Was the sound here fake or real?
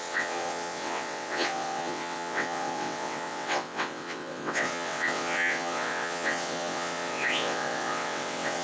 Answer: fake